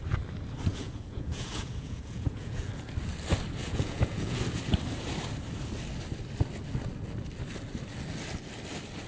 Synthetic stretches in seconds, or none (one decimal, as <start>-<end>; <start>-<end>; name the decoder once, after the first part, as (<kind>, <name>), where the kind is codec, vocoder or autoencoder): 0.7-2.7 (vocoder, Vocos); 3.6-4.4